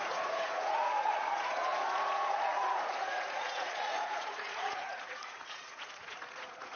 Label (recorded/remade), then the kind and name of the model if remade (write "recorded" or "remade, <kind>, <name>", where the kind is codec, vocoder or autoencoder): remade, vocoder, Vocos